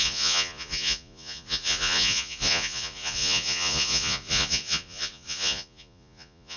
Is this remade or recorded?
remade